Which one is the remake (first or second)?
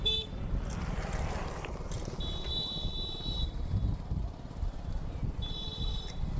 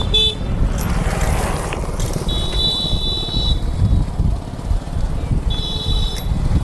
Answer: first